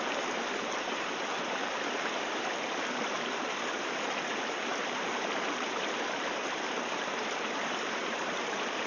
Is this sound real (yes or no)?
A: no